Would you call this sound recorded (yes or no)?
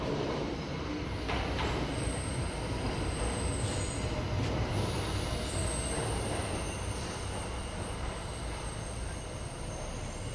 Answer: yes